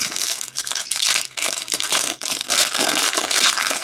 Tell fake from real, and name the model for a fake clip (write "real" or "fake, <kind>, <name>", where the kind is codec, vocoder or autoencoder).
fake, codec, SNAC